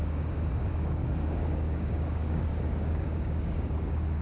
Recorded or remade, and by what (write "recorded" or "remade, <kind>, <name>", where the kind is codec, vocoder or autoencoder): remade, codec, DAC